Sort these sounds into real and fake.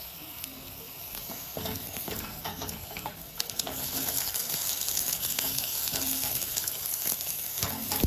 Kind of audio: fake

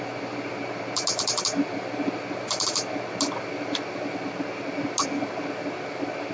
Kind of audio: real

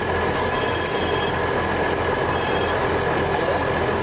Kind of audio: real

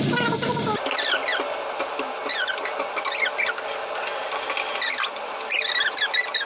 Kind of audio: real